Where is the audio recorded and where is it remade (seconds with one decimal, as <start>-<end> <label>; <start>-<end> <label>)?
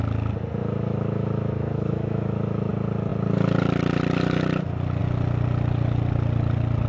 0.0-0.6 recorded; 0.6-2.7 remade; 2.7-6.9 recorded